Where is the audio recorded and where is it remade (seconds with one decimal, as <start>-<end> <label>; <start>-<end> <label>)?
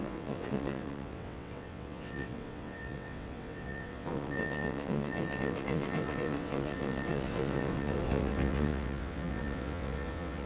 0.0-10.5 remade